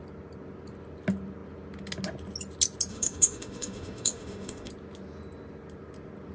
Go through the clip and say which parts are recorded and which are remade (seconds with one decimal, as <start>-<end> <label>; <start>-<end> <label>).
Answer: 0.0-2.9 recorded; 2.9-4.7 remade; 4.7-6.3 recorded